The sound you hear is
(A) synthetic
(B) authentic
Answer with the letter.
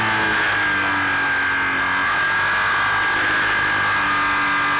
B